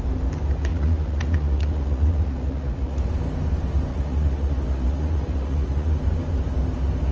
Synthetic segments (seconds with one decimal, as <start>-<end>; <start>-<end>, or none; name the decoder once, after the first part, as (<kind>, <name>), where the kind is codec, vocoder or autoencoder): 0.7-3.0 (vocoder, Vocos); 3.9-5.9